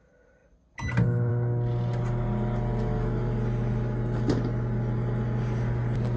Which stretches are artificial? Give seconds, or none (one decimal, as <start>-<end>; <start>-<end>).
none